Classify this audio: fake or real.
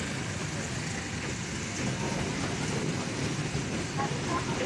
real